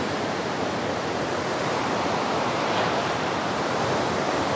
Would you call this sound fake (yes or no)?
yes